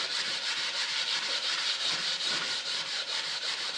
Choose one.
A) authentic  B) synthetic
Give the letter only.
B